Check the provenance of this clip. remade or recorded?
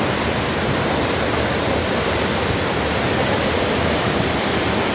recorded